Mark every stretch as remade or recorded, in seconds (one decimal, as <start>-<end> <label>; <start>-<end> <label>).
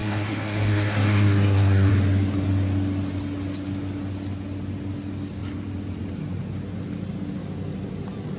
0.0-1.9 remade; 1.9-8.4 recorded